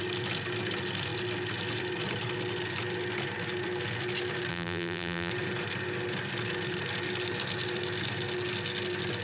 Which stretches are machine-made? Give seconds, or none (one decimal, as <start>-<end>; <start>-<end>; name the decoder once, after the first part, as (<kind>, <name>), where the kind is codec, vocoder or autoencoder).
4.5-5.3 (vocoder, BigVGAN v2)